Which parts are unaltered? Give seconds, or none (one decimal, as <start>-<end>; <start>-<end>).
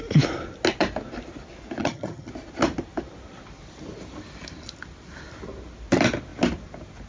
0.0-1.8; 2.3-7.1